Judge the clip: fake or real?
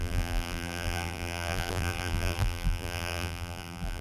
fake